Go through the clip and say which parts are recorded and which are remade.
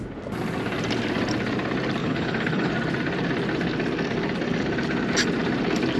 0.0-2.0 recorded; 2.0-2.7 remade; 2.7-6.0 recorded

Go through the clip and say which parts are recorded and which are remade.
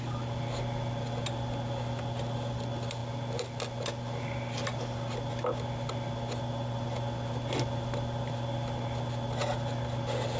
0.0-10.4 recorded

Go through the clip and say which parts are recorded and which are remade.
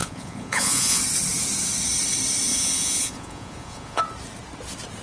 0.0-1.0 remade; 1.0-2.5 recorded; 2.5-4.0 remade; 4.0-5.0 recorded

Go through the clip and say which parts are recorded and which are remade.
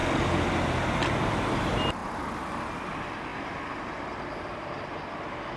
0.0-5.6 recorded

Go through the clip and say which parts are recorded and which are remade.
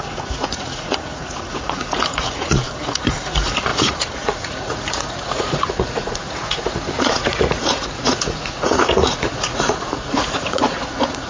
0.0-11.3 remade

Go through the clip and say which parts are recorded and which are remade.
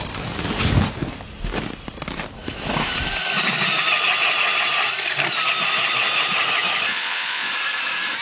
0.0-6.9 recorded; 6.9-7.5 remade; 7.5-8.2 recorded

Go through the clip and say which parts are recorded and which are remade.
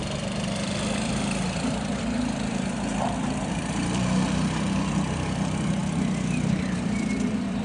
0.0-7.6 remade